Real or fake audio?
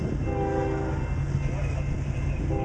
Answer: real